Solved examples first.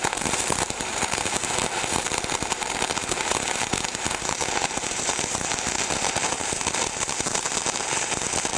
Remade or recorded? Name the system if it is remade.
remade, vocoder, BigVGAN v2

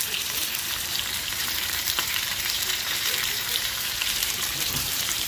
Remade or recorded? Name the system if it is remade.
remade, vocoder, BigVGAN v2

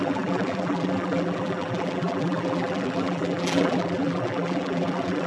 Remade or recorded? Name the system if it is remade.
remade, vocoder, BigVGAN v2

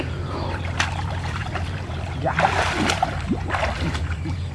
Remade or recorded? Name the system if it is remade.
remade, vocoder, BigVGAN v2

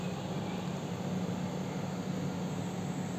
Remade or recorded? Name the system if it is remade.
recorded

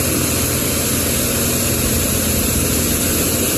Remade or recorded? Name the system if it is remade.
recorded